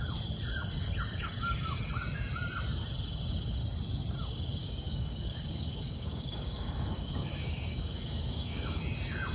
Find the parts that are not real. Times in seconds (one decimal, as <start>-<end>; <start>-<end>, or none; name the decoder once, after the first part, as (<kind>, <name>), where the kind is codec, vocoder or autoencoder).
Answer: 4.6-8.8 (codec, DAC)